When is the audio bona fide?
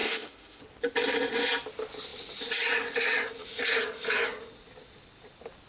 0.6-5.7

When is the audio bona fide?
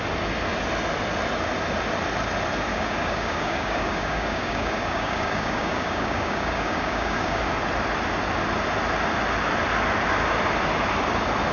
0.0-2.7; 7.4-11.5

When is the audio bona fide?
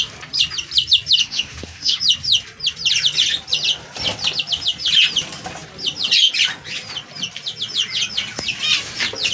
0.0-1.2; 2.0-9.3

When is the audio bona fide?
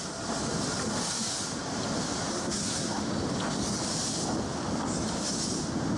0.0-2.3; 3.0-6.0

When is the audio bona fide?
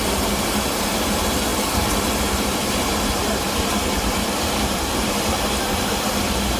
none